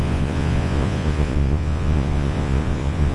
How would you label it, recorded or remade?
remade